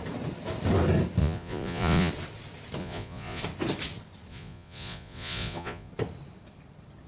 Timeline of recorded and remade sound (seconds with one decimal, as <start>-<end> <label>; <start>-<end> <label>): 0.0-1.2 recorded; 1.2-2.1 remade; 2.1-2.8 recorded; 2.8-3.4 remade; 3.4-4.3 recorded; 4.3-5.9 remade; 5.9-7.1 recorded